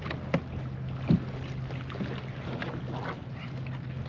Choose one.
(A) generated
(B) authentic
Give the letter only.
B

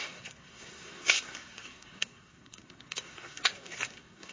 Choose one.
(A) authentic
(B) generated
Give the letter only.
B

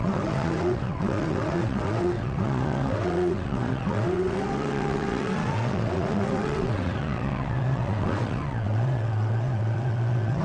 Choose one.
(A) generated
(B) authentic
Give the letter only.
A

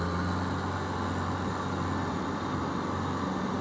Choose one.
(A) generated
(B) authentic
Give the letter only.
B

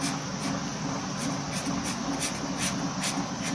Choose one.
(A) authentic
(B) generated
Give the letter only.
A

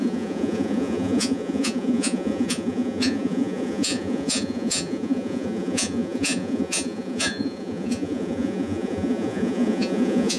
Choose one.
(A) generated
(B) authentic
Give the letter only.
A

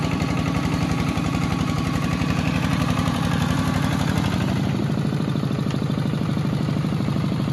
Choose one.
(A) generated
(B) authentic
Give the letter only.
A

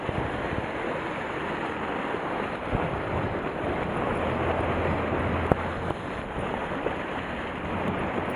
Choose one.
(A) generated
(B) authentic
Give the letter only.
B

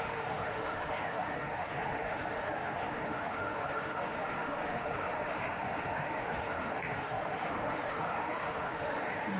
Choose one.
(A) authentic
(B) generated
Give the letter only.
B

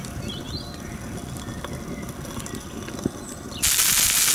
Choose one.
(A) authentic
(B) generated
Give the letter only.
A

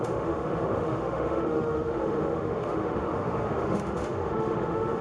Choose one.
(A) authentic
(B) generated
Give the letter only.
B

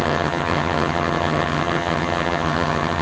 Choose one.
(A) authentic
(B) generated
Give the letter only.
B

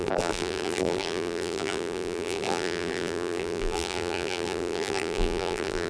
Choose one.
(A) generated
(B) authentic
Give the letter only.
A